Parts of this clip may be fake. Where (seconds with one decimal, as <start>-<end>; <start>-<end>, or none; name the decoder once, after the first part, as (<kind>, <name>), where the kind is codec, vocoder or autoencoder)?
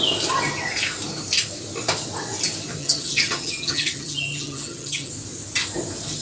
2.8-5.1 (vocoder, HiFi-GAN)